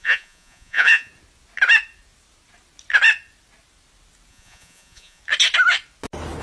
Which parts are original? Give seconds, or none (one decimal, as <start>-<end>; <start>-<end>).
1.1-4.3; 5.2-6.4